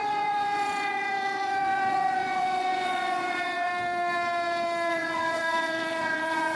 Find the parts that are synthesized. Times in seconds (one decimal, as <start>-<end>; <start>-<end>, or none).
0.0-3.7; 4.9-6.6